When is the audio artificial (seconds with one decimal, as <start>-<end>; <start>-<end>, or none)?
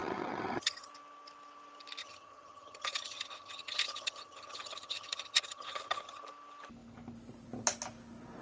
0.0-0.9; 2.0-6.2